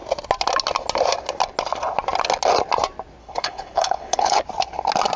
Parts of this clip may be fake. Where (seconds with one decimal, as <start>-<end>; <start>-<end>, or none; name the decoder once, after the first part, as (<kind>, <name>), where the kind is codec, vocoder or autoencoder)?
3.2-4.4 (codec, HILCodec)

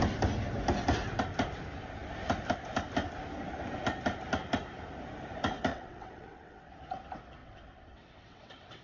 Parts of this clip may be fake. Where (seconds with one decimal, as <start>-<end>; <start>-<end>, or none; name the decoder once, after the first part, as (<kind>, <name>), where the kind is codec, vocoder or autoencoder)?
5.7-6.7 (vocoder, WaveNeXt); 7.4-8.8